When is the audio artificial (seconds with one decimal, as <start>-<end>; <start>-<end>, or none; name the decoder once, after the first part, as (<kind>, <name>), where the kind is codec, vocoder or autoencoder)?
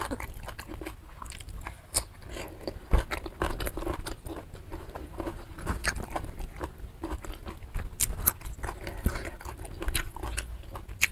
4.7-5.5 (vocoder, BigVGAN v2)